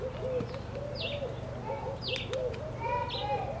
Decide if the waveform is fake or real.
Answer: real